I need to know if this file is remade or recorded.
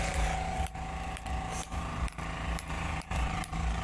remade